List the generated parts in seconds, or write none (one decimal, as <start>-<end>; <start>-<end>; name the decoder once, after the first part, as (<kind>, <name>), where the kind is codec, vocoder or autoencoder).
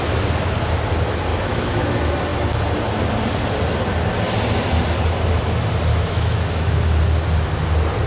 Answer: 1.3-1.9 (autoencoder, DAC-VAE); 5.9-6.8